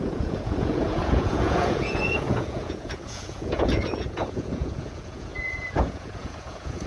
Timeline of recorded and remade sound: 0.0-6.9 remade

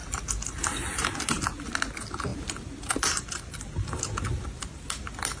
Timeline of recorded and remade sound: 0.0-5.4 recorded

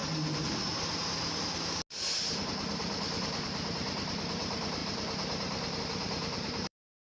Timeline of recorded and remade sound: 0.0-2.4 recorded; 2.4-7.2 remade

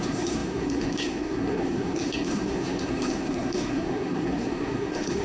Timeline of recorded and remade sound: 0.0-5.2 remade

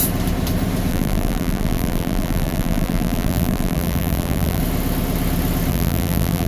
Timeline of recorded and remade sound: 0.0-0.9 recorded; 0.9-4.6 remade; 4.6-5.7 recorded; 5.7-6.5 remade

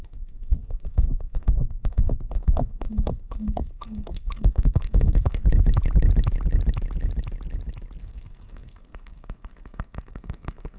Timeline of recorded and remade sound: 0.0-5.4 remade; 5.4-8.0 recorded; 8.0-10.8 remade